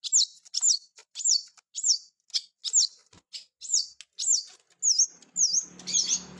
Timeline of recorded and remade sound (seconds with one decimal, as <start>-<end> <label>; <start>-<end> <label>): 0.0-6.4 recorded